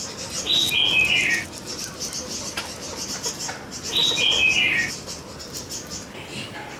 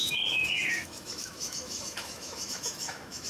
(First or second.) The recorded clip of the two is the first